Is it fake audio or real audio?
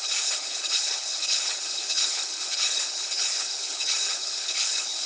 fake